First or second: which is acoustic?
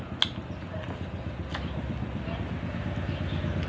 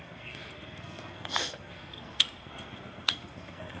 first